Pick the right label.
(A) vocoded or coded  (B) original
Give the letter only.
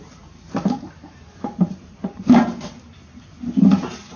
B